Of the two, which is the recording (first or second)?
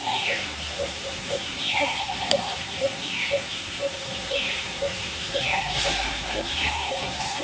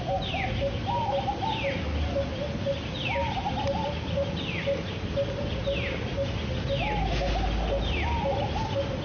second